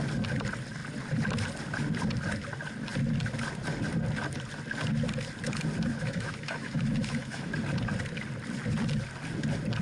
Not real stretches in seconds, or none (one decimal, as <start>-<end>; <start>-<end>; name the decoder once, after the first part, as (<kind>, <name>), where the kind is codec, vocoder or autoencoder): 5.9-7.5 (autoencoder, DAC-VAE)